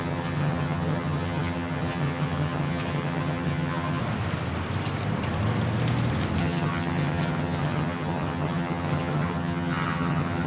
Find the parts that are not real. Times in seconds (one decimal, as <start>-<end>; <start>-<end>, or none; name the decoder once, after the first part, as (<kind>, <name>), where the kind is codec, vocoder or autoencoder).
0.0-4.0 (vocoder, HiFi-GAN); 6.4-10.5